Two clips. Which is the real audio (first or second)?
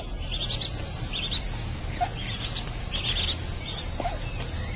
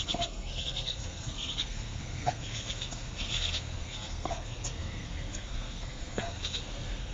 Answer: first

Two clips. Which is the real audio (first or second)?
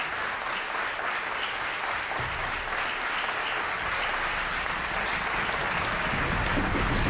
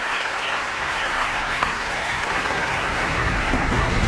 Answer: first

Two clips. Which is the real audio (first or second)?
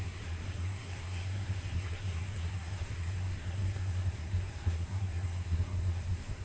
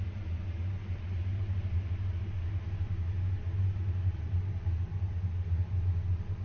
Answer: second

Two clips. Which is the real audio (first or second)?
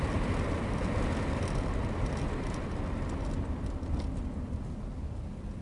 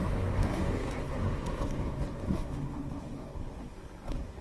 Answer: first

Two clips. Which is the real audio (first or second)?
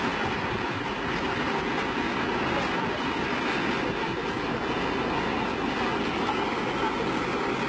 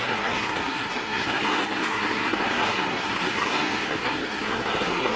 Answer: first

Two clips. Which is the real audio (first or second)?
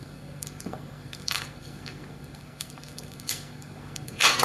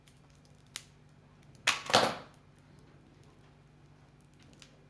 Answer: second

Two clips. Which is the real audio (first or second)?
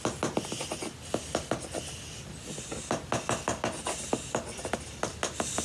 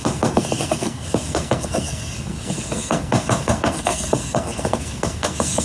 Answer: first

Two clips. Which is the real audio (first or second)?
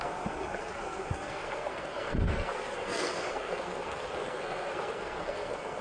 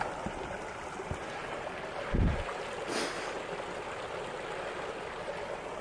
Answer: second